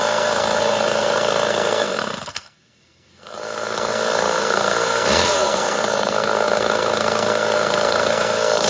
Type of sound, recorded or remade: remade